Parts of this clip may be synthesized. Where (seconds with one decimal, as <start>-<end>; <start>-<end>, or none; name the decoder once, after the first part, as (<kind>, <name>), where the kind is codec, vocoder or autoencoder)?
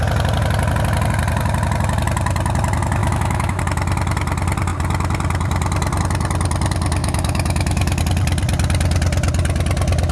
3.0-3.6 (autoencoder, DAC-VAE); 7.0-8.0